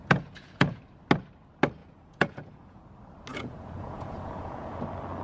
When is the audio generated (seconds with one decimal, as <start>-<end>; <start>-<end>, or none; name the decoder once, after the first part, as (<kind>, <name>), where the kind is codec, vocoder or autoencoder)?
0.0-0.8 (vocoder, Vocos); 1.8-2.8; 3.3-4.8